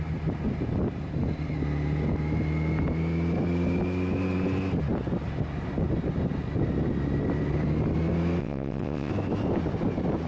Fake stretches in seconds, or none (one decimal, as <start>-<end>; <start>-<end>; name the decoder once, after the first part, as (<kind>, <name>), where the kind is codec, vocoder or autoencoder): 8.4-9.1 (vocoder, WaveNeXt)